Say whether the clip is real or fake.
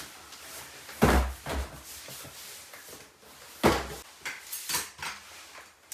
real